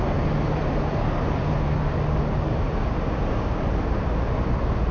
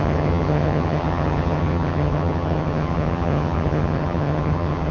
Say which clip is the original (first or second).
first